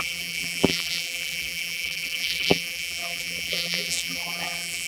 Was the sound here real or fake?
fake